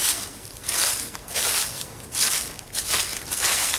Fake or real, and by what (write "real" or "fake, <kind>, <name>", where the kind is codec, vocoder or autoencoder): fake, codec, SNAC